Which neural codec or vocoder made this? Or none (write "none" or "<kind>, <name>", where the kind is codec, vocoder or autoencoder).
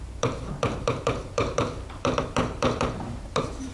vocoder, BigVGAN v2